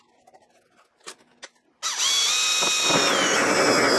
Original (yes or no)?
yes